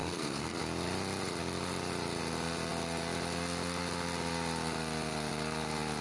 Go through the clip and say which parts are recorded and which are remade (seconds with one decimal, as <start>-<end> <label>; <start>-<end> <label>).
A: 0.0-0.6 remade; 0.6-6.0 recorded